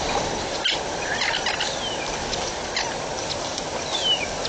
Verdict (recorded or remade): recorded